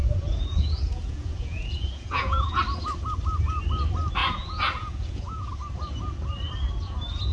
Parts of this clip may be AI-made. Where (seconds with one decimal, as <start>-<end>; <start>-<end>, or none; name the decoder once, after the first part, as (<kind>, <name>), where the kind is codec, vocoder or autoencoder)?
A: 0.0-2.6 (vocoder, Vocos); 4.2-5.5